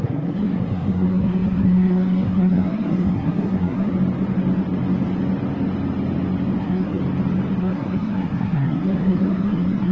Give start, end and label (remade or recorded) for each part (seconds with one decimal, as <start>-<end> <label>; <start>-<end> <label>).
0.0-3.9 remade; 3.9-6.6 recorded; 6.6-7.0 remade; 7.0-7.6 recorded; 7.6-9.9 remade